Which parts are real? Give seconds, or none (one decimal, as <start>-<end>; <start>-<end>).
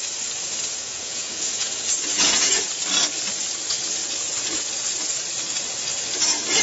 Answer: 0.0-0.8; 2.5-4.0; 4.7-6.6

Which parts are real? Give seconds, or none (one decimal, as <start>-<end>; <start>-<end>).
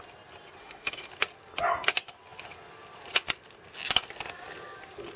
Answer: 0.0-0.6; 1.1-5.2